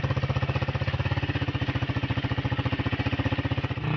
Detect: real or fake real